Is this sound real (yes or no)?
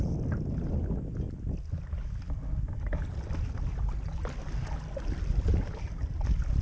yes